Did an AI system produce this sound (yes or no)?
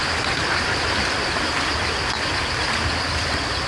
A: no